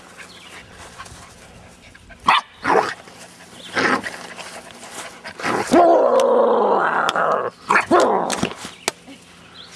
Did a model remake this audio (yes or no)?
no